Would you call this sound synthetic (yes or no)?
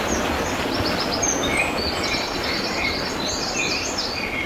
no